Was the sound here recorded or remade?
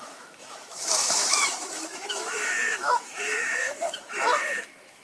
remade